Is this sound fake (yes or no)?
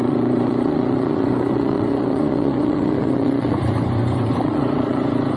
yes